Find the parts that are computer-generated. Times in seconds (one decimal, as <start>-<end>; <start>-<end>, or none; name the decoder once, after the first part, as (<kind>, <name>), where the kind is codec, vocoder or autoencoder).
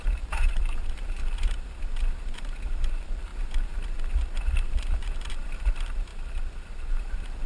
0.0-6.1 (vocoder, BigVGAN v2); 6.9-7.5